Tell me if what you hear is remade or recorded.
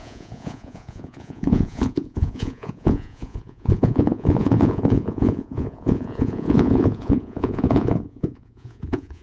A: remade